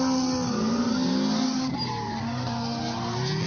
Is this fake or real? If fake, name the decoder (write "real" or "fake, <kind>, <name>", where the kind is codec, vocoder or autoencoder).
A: real